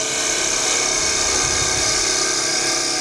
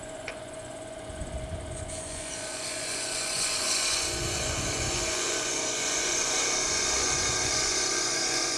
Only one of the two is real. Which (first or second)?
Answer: first